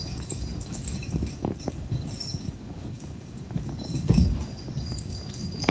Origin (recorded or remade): remade